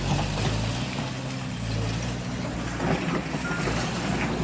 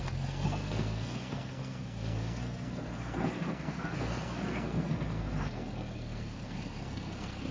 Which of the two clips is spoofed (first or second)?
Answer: second